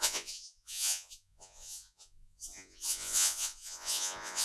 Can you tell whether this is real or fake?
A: fake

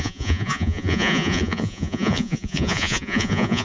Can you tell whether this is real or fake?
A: fake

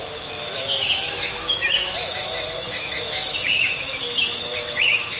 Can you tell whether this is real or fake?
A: fake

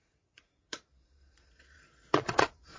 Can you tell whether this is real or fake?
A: fake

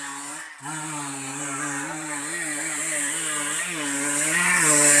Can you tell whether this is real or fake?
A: real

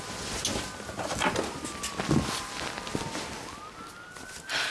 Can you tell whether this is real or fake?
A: real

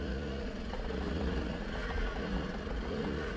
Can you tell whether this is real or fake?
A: fake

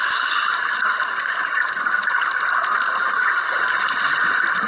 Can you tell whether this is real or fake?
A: real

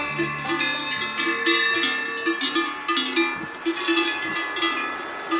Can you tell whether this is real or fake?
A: real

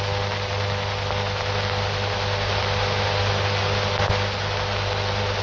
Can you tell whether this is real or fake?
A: real